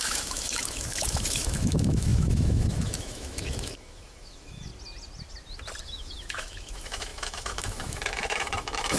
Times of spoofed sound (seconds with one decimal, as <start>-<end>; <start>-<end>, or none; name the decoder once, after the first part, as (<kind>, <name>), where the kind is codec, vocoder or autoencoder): 0.0-4.7 (autoencoder, DAC-VAE); 5.8-9.0